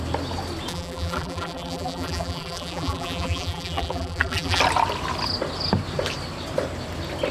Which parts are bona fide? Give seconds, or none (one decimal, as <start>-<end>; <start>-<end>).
0.0-0.7; 4.6-7.3